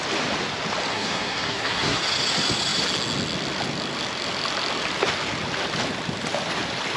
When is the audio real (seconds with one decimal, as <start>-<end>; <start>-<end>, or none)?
0.0-0.9; 2.0-7.0